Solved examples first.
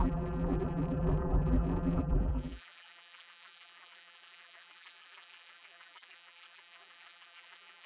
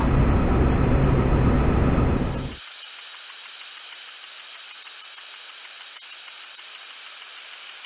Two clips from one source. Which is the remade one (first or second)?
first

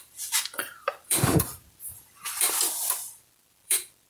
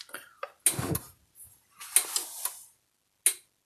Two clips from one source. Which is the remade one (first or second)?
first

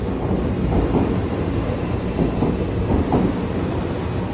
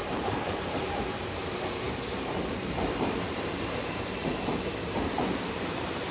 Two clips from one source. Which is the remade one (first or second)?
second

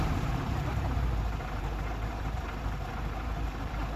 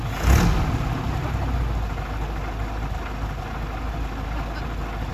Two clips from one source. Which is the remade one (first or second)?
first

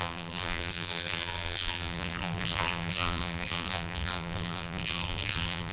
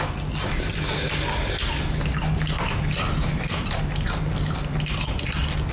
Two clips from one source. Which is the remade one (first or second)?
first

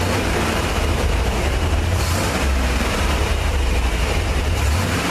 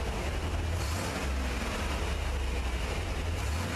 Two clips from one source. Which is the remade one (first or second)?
first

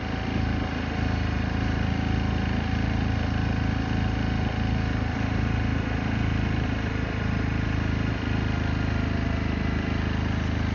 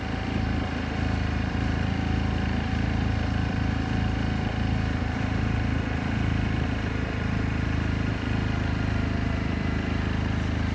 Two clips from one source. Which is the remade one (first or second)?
second